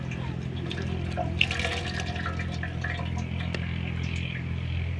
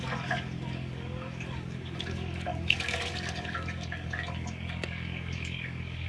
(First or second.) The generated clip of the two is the second